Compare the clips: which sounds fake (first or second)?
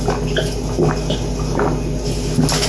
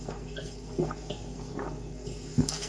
second